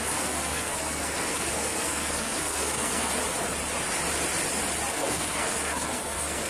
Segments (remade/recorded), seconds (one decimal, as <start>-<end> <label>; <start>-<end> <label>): 0.0-3.1 remade; 3.1-4.9 recorded; 4.9-6.5 remade